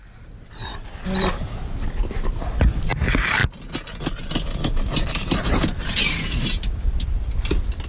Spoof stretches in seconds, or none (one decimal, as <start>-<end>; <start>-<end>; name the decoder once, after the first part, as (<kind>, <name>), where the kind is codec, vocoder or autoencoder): 3.4-5.9 (vocoder, BigVGAN v2)